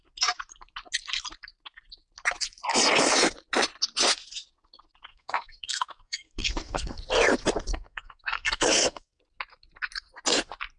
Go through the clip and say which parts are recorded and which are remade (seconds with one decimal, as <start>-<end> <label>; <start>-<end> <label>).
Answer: 0.0-5.1 recorded; 5.1-7.0 remade; 7.0-7.7 recorded; 7.7-9.2 remade; 9.2-10.8 recorded